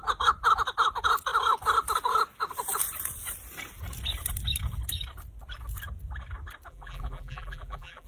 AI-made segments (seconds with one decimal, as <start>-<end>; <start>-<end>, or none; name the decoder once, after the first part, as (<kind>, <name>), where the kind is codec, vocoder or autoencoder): 6.7-8.1 (vocoder, BigVGAN v2)